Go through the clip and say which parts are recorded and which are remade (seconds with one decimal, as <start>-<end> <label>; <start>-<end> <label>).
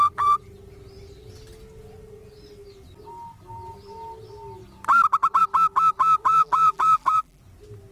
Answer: 0.0-6.3 recorded; 6.3-7.4 remade; 7.4-7.9 recorded